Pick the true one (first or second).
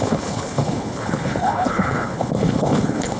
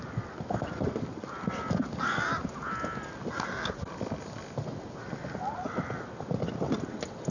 second